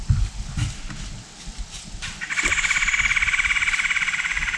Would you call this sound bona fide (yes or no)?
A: yes